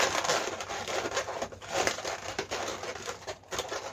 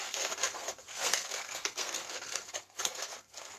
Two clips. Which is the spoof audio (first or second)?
second